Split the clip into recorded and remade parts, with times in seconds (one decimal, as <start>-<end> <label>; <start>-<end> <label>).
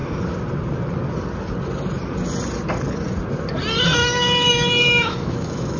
0.0-4.0 recorded; 4.0-5.8 remade